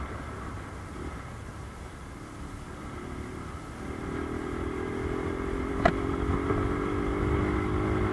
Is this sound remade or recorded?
recorded